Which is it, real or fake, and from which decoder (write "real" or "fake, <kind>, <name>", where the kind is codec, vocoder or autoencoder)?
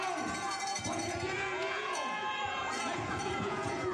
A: fake, vocoder, Vocos